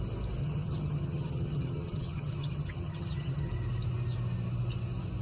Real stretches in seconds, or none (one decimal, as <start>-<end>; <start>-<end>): 0.0-0.4; 3.5-5.2